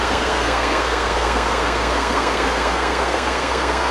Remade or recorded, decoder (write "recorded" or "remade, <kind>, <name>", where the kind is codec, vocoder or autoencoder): remade, codec, SNAC